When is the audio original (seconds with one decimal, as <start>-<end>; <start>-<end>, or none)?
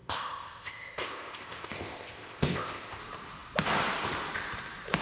3.0-5.0